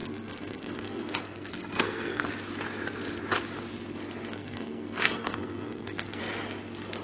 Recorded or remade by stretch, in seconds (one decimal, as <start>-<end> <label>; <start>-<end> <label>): 0.0-2.3 remade; 2.3-4.3 recorded; 4.3-6.2 remade; 6.2-7.0 recorded